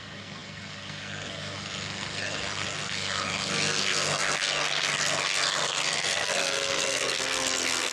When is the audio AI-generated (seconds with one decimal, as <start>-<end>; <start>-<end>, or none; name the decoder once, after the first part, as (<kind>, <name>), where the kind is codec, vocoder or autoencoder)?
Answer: 0.0-7.9 (codec, SNAC)